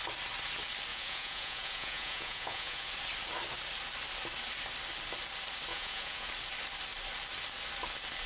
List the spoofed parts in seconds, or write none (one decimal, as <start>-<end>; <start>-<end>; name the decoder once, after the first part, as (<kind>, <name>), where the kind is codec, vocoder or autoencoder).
0.9-2.9 (vocoder, Vocos); 5.7-6.3